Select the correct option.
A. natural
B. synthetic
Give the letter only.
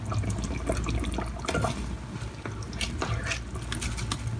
A